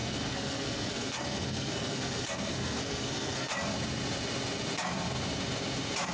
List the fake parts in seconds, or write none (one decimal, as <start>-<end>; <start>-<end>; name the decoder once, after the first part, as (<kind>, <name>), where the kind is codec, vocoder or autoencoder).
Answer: 0.0-3.5 (codec, SNAC)

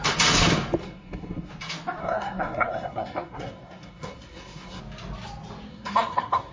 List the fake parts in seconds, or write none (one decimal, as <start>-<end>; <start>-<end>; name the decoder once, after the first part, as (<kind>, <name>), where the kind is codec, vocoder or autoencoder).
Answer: 0.8-1.5 (codec, SNAC); 2.0-4.8; 5.7-6.5

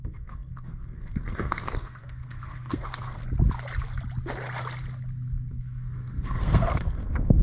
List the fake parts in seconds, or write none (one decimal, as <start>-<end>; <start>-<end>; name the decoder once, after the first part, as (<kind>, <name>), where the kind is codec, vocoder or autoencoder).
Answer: 0.0-3.2 (codec, SNAC); 5.5-7.4

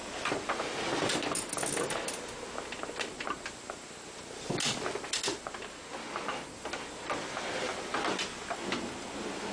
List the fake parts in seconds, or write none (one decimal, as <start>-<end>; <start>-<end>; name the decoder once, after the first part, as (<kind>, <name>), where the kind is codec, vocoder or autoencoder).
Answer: none